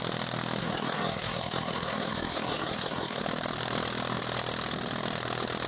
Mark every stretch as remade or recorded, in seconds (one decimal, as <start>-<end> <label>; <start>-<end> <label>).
0.0-0.6 recorded; 0.6-3.2 remade; 3.2-5.7 recorded